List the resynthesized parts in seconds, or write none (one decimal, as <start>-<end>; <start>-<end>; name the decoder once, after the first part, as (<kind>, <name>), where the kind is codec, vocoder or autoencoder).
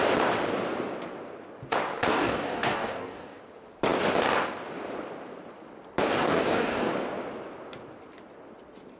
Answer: 2.1-3.4 (codec, DAC); 6.2-6.9